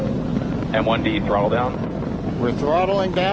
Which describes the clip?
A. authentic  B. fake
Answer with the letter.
A